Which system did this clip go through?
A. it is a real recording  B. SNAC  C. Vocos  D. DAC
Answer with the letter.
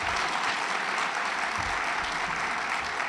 A